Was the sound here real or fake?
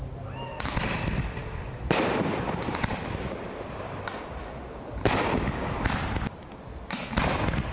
real